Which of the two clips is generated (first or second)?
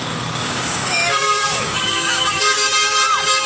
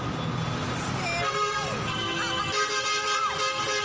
first